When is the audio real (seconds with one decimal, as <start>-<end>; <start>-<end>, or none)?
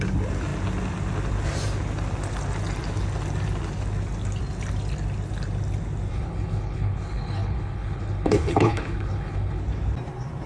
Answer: 0.0-6.1; 9.6-10.5